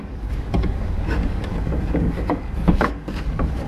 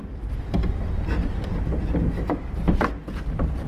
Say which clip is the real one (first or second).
second